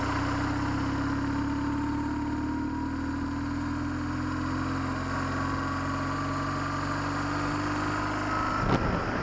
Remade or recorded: recorded